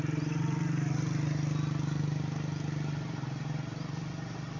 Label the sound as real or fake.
real